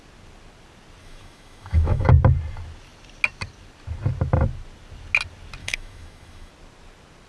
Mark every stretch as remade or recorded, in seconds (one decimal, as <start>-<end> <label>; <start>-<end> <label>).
0.0-1.0 recorded; 1.0-2.1 remade; 2.1-5.6 recorded; 5.6-6.5 remade; 6.5-7.3 recorded